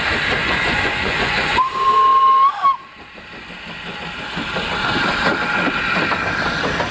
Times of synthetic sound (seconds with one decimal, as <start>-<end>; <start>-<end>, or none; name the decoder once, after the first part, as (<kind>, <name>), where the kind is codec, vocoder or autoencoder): 0.4-1.7 (vocoder, Vocos)